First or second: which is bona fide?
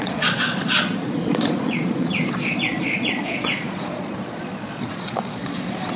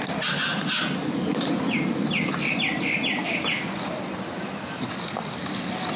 second